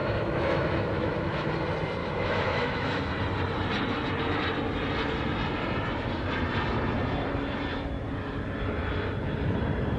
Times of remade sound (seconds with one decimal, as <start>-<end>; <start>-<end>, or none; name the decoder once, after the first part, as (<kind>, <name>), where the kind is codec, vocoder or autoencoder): 0.0-1.5 (autoencoder, DAC-VAE); 2.0-3.0